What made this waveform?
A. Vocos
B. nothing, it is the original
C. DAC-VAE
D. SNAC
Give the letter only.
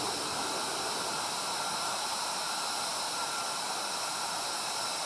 B